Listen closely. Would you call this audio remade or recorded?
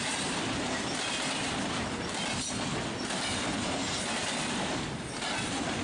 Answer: recorded